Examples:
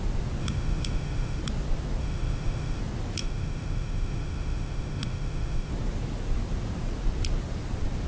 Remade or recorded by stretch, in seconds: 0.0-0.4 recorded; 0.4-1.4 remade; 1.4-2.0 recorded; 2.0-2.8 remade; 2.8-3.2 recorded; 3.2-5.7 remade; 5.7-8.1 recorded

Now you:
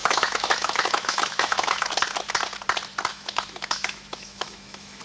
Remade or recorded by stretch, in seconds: 0.0-1.9 remade; 1.9-3.1 recorded; 3.1-5.0 remade

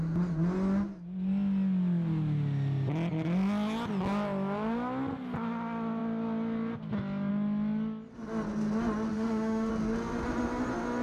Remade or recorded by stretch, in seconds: 0.0-9.1 recorded; 9.1-9.7 remade; 9.7-11.0 recorded